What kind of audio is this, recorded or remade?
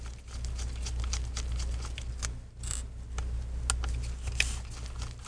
recorded